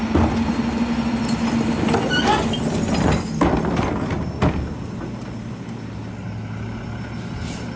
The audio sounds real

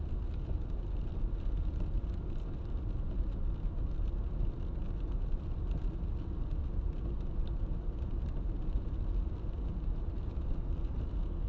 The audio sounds real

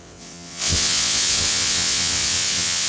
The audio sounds fake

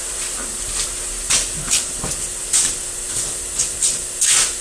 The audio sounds real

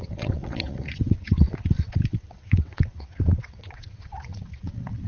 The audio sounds fake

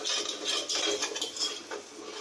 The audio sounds real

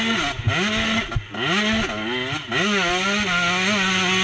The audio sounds real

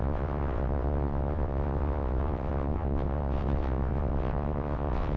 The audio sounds fake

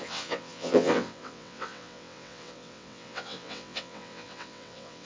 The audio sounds fake